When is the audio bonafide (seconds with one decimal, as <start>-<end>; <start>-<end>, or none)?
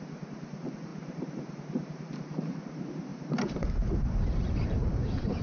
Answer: none